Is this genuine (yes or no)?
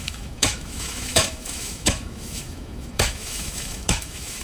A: no